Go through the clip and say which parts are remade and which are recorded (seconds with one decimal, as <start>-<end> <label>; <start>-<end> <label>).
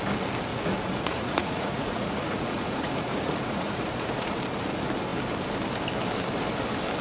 0.0-0.5 recorded; 0.5-4.4 remade; 4.4-7.0 recorded